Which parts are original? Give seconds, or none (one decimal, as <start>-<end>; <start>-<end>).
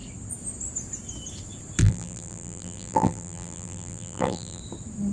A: 0.0-1.8; 4.6-5.1